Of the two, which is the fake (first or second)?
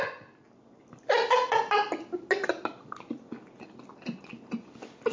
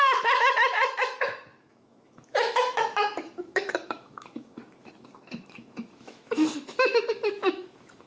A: second